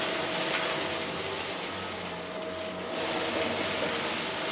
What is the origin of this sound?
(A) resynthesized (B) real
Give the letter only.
B